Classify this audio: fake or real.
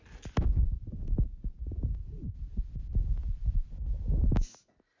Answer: real